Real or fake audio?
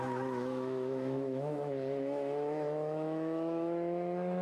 fake